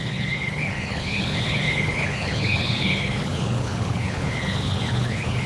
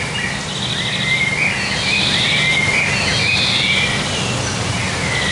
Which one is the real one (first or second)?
second